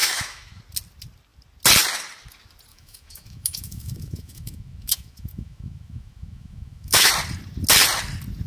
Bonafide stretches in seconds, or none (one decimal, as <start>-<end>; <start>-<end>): 0.6-2.7; 7.1-8.5